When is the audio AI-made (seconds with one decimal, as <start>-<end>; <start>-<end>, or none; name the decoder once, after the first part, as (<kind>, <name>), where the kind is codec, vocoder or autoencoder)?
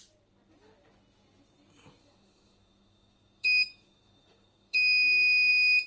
2.0-5.5 (autoencoder, DAC-VAE)